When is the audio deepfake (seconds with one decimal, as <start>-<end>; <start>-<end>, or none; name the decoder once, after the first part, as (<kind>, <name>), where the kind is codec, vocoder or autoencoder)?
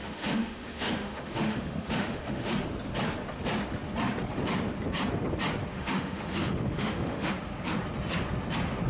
0.0-2.5 (autoencoder, DAC-VAE); 5.7-7.3